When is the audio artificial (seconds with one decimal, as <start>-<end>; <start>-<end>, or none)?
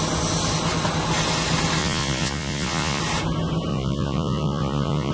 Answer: 1.8-3.0; 3.7-5.1